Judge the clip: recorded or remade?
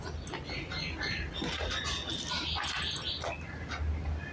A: recorded